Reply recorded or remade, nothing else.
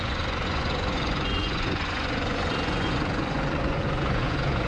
remade